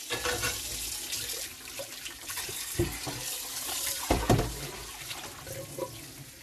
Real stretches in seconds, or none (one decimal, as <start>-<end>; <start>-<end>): 0.0-3.0; 4.4-6.4